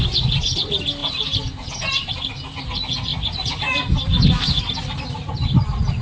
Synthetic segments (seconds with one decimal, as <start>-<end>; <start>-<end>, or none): none